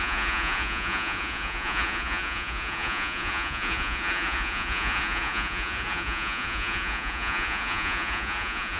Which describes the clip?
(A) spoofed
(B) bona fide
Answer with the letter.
A